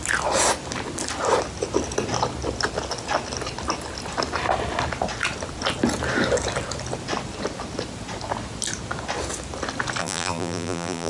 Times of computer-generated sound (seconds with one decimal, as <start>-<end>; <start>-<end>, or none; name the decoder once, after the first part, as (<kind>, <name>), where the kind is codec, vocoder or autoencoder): 10.0-11.1 (vocoder, BigVGAN v2)